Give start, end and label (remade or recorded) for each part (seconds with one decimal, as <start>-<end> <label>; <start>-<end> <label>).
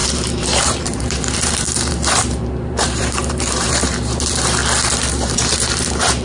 0.0-4.6 remade; 4.6-5.1 recorded; 5.1-6.2 remade